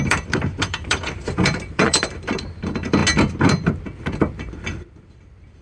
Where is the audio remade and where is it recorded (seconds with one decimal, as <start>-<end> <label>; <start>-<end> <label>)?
0.0-3.0 remade; 3.0-4.4 recorded; 4.4-5.6 remade